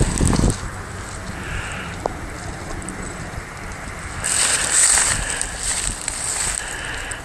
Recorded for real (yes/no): yes